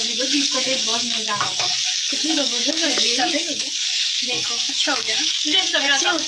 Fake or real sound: fake